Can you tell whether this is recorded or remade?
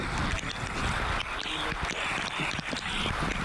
recorded